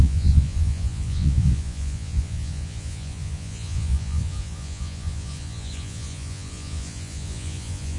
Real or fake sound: fake